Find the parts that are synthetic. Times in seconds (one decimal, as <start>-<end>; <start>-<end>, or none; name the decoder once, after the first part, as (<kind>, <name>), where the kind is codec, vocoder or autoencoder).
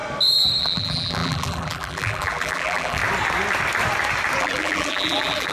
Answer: 0.6-3.0 (vocoder, BigVGAN v2); 4.4-5.5